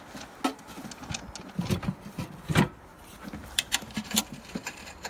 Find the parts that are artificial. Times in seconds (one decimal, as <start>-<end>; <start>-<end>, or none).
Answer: 2.9-5.1

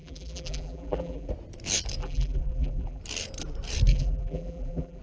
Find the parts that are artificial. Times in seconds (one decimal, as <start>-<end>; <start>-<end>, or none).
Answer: 0.0-1.3; 2.0-3.0; 3.9-5.0